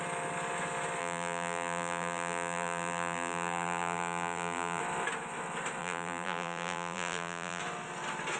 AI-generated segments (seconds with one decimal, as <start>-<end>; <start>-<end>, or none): 1.0-4.8; 5.8-7.6

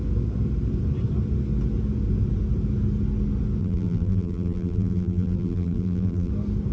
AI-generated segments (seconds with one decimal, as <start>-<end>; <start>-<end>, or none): 3.6-6.3

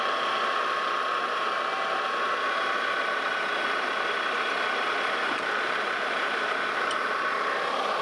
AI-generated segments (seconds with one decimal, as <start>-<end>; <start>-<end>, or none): 5.2-7.3

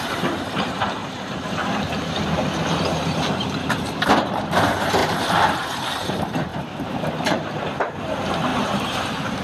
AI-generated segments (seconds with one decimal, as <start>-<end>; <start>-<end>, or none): 0.0-9.4

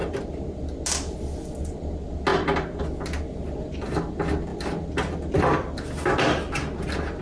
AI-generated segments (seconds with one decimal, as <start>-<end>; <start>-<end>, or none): 0.0-0.6; 2.3-2.8

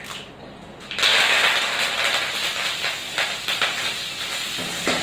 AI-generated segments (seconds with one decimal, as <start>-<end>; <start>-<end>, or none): none